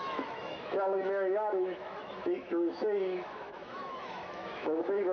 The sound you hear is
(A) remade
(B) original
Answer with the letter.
A